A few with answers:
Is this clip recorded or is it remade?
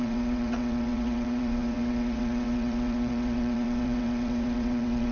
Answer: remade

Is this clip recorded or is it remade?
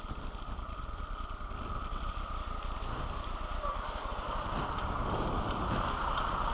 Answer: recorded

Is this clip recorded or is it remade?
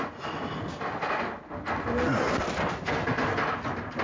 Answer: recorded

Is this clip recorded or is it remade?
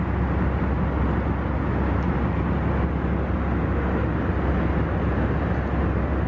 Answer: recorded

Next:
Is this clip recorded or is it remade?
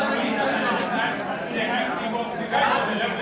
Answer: recorded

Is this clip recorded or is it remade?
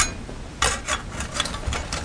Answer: recorded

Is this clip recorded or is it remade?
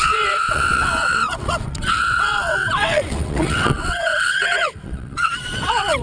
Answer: remade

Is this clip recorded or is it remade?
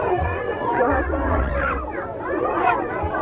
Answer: remade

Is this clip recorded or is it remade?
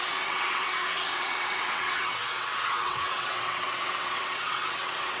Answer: remade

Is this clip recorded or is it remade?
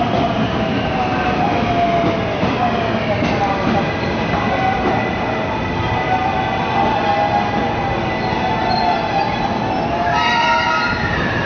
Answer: recorded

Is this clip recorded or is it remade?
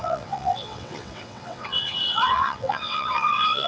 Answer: remade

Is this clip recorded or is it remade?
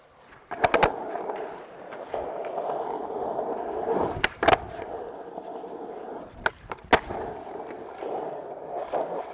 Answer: recorded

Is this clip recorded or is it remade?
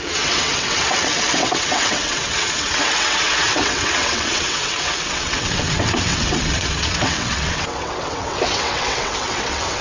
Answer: remade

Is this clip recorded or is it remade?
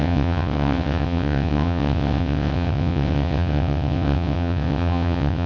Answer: remade